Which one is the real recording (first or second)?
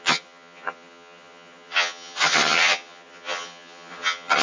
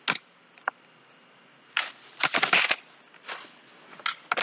second